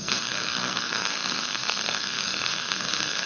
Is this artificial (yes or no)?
yes